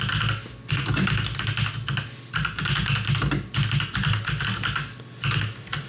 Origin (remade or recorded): recorded